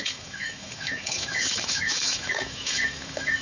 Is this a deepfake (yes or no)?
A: yes